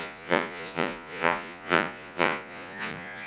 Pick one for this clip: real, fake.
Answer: fake